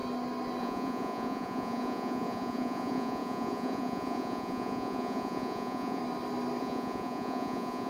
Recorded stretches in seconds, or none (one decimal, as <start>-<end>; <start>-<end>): 0.0-0.6; 6.0-6.6